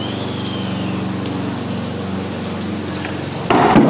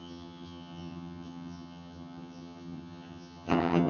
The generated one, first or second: second